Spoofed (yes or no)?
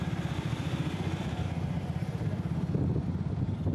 yes